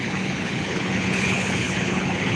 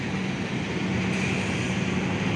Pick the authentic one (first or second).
second